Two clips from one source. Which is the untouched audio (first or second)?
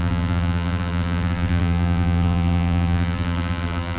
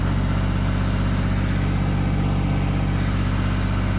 second